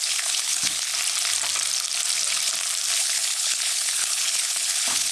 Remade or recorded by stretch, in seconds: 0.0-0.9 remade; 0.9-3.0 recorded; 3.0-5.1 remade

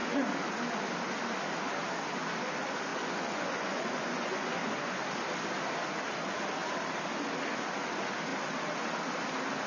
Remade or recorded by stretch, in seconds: 0.0-2.9 recorded; 2.9-5.0 remade; 5.0-9.7 recorded

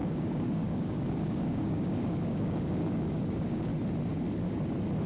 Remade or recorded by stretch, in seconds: 0.0-3.7 remade; 3.7-5.1 recorded